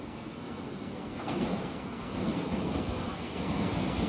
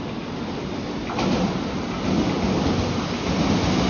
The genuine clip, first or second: second